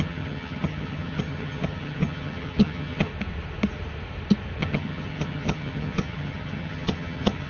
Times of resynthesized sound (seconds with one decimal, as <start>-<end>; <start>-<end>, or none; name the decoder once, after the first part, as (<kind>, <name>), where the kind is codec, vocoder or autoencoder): 0.0-3.1 (vocoder, HiFi-GAN); 4.6-7.5